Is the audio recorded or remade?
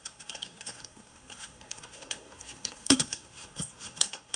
remade